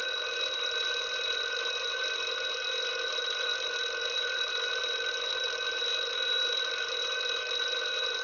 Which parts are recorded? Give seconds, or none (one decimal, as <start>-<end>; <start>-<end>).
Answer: 0.0-8.2